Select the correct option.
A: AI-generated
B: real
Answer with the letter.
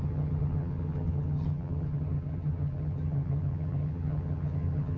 A